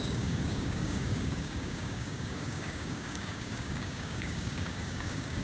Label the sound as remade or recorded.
remade